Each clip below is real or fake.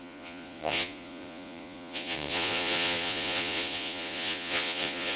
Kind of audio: fake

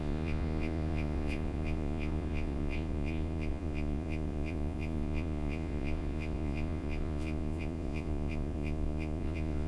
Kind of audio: fake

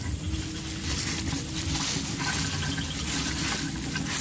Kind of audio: real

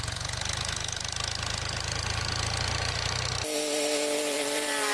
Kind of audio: real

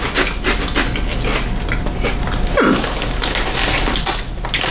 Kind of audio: real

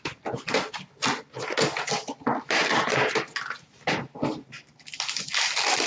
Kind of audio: real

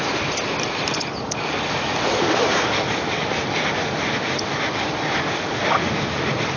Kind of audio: real